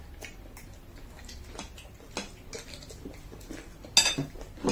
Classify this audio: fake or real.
real